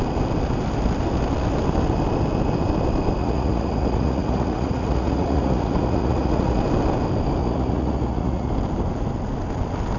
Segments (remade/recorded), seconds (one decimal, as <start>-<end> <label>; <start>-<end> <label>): 0.0-3.2 recorded; 3.2-6.6 remade; 6.6-7.4 recorded; 7.4-8.5 remade; 8.5-10.0 recorded